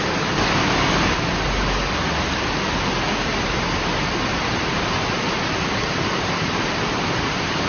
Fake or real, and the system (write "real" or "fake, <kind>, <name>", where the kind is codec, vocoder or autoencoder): real